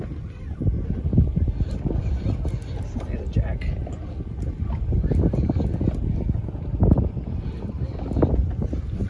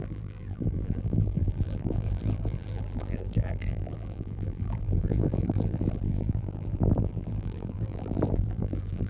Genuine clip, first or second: first